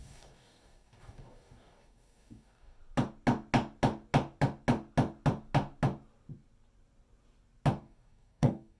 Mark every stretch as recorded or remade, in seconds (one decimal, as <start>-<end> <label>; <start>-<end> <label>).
0.0-2.8 remade; 2.8-7.8 recorded; 7.8-8.8 remade